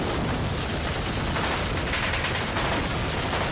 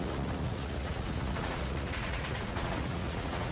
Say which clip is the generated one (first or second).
second